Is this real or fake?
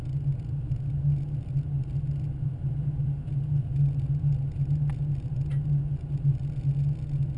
real